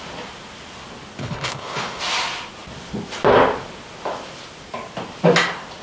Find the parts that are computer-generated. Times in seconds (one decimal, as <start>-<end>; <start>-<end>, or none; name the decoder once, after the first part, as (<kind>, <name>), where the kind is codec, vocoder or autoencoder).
1.2-2.0 (codec, HILCodec)